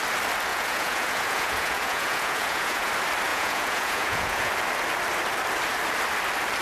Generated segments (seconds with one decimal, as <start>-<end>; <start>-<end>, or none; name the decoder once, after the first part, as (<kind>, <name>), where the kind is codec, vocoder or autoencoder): 0.5-2.9 (vocoder, Vocos); 3.3-4.5